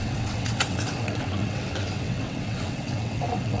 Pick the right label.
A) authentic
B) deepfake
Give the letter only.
B